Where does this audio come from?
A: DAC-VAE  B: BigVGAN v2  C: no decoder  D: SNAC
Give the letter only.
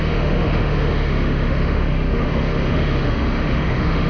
A